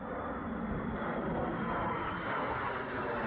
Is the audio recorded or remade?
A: recorded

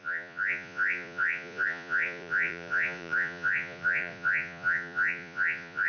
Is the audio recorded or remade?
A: remade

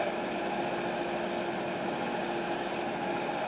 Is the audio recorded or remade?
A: recorded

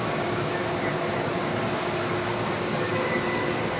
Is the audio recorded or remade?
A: remade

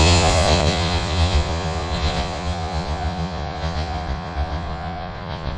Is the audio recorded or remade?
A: remade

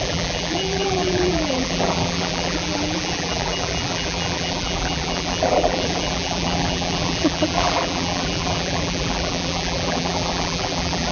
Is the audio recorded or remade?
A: remade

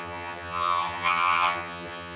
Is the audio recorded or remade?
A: remade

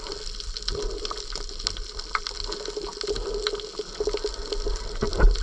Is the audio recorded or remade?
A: recorded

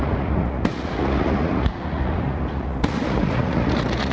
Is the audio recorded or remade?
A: remade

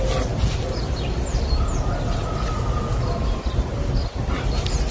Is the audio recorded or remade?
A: recorded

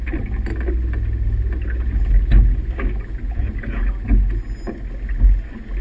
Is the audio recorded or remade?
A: recorded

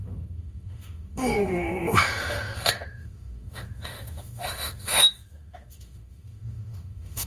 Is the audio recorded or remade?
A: remade